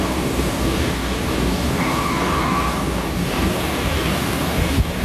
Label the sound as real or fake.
fake